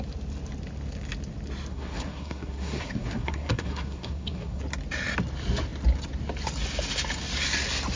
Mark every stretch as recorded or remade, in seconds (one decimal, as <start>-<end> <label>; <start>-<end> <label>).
0.0-1.7 recorded; 1.7-4.6 remade; 4.6-8.0 recorded